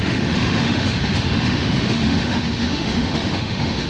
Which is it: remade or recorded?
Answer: remade